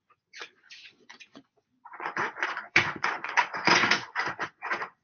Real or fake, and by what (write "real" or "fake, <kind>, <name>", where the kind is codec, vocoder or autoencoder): fake, vocoder, Vocos